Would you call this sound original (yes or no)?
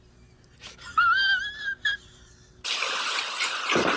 yes